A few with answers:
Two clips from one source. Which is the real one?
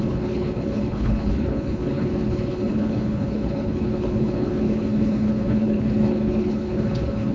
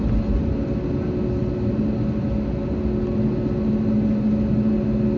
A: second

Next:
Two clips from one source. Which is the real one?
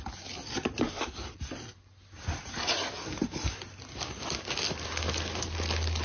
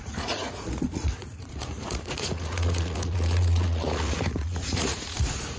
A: first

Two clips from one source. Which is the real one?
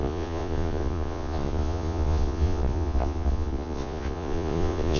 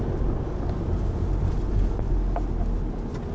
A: second